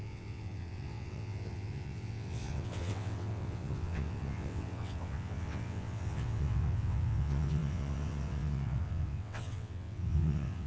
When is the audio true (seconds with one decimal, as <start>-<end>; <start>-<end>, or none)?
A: none